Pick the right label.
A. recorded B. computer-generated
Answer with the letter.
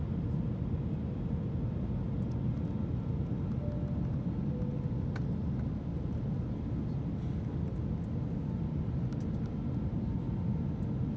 A